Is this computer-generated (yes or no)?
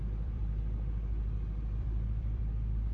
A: yes